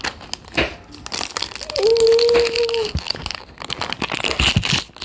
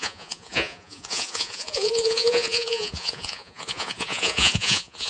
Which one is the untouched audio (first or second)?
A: first